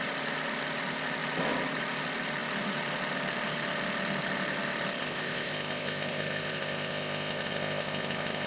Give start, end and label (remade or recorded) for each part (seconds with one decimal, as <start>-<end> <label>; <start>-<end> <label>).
0.0-5.0 recorded; 5.0-8.5 remade

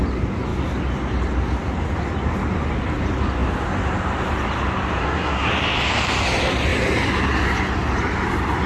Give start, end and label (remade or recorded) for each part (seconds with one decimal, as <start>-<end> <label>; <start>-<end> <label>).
0.0-5.0 recorded; 5.0-5.5 remade; 5.5-8.7 recorded

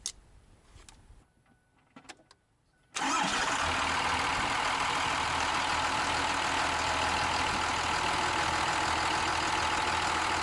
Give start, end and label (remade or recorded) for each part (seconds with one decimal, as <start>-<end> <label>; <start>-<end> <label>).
0.0-4.3 recorded; 4.3-5.5 remade; 5.5-10.4 recorded